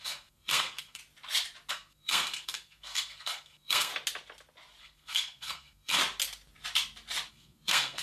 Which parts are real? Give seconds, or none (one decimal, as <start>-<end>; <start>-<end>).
1.0-1.7; 3.9-4.8; 6.0-7.3